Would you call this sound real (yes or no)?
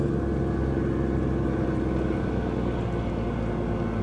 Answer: yes